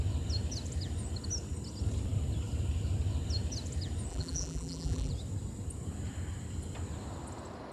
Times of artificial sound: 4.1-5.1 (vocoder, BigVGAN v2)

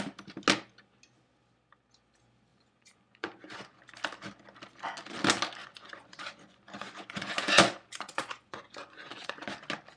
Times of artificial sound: 2.5-3.8 (vocoder, Vocos); 5.6-9.3

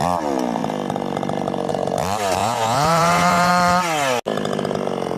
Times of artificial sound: 2.4-3.5 (vocoder, Vocos)

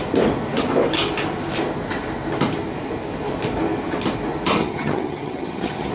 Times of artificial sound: 4.6-5.9 (vocoder, HiFi-GAN)

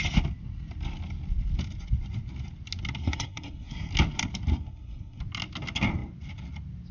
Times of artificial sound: 3.0-3.9 (codec, SNAC); 4.5-5.2

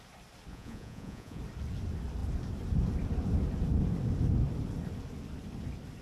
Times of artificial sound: 0.5-1.4 (vocoder, Vocos)

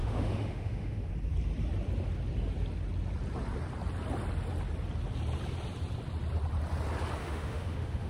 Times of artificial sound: 0.0-1.1 (autoencoder, DAC-VAE); 7.2-8.1